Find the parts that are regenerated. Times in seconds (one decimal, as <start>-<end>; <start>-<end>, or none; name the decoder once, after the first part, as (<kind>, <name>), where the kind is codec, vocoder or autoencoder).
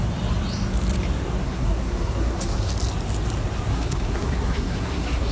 1.4-2.7 (codec, SNAC); 3.7-5.3